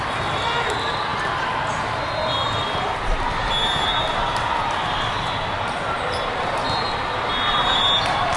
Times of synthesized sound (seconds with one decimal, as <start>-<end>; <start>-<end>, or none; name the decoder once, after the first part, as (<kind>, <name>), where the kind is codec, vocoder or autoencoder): none